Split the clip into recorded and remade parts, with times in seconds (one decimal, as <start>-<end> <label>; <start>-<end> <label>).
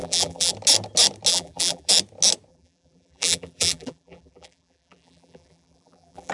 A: 0.0-0.5 remade; 0.5-1.3 recorded; 1.3-1.9 remade; 1.9-2.5 recorded; 2.5-6.3 remade